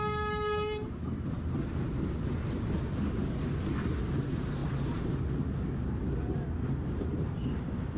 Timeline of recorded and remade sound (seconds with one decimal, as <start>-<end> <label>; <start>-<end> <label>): 0.0-8.0 recorded